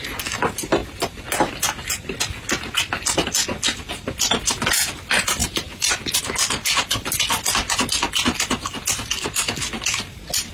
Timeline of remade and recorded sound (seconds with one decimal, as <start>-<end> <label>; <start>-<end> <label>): 0.0-5.4 recorded; 5.4-6.2 remade; 6.2-10.5 recorded